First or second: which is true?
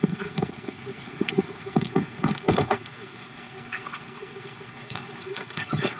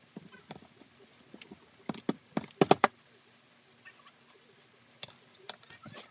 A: second